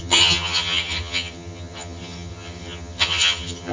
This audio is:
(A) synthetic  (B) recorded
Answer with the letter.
A